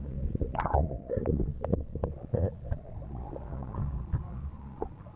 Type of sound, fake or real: fake